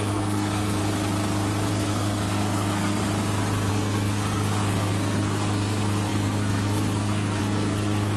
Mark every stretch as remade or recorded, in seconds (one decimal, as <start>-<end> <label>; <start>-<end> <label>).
0.0-0.8 remade; 0.8-1.7 recorded; 1.7-3.0 remade; 3.0-3.7 recorded; 3.7-8.2 remade